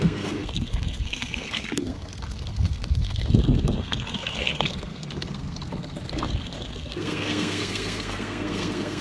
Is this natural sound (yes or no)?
no